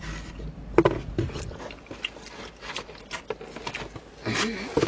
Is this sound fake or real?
real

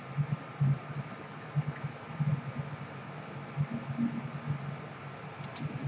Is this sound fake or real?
real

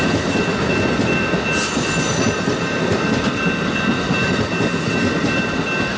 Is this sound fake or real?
real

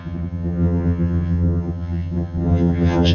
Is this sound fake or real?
fake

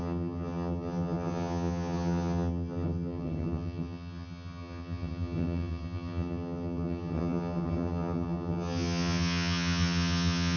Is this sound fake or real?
fake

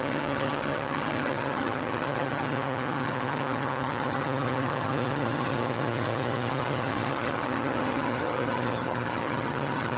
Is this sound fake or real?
fake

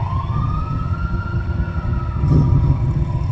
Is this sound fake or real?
fake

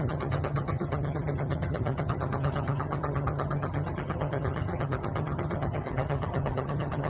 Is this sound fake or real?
fake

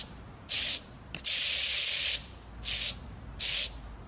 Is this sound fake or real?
real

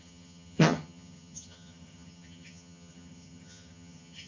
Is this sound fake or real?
fake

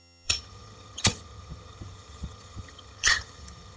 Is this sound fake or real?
fake